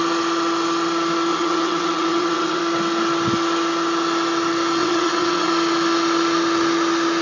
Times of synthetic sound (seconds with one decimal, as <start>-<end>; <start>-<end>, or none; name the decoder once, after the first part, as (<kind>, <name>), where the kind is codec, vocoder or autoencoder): 1.3-2.6 (vocoder, WaveNeXt); 4.8-5.5

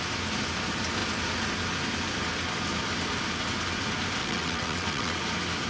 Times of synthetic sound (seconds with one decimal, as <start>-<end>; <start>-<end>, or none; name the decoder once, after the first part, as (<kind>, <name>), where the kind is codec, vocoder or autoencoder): 4.2-5.2 (vocoder, WaveNeXt)

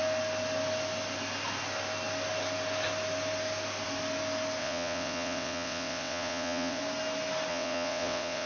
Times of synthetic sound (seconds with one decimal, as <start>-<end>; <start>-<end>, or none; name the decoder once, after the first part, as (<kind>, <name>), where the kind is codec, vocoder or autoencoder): 4.6-6.8 (vocoder, WaveNeXt); 7.5-8.5

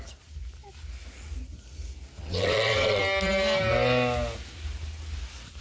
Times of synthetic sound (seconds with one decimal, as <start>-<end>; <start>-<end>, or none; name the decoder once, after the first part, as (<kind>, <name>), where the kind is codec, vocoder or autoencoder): 2.2-3.0 (vocoder, WaveNeXt)

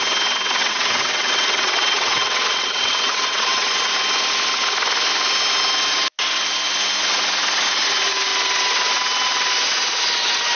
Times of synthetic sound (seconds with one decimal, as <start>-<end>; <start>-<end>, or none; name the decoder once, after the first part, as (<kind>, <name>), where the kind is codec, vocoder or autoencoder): 0.6-3.7 (vocoder, WaveNeXt)

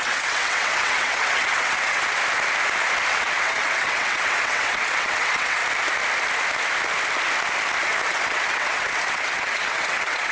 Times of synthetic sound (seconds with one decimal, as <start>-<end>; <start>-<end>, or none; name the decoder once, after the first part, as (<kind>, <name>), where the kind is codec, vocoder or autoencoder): 0.0-2.2 (vocoder, WaveNeXt); 3.1-5.6; 8.1-10.3

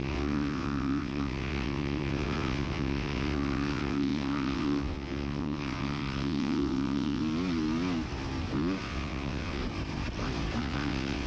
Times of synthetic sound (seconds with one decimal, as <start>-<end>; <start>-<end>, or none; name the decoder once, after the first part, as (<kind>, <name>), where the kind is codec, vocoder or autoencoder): 0.0-7.2 (vocoder, WaveNeXt); 8.8-9.6; 10.6-11.3